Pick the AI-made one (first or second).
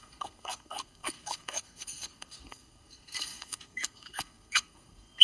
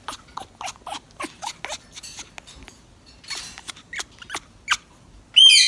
first